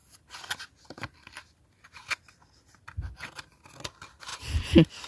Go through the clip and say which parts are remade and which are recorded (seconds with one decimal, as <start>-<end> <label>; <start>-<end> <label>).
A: 0.0-5.1 recorded